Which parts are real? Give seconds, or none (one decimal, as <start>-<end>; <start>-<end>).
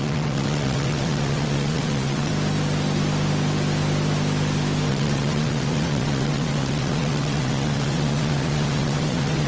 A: 2.3-4.9